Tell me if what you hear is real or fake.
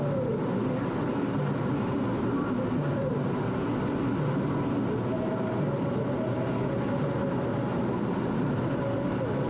real